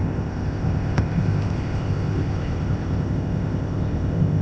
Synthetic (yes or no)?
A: yes